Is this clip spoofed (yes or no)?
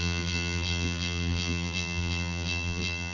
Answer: yes